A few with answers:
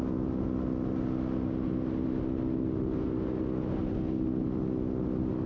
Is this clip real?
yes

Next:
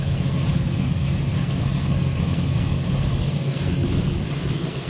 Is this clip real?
no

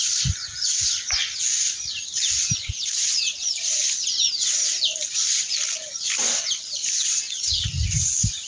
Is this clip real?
yes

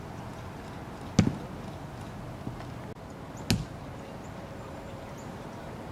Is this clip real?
yes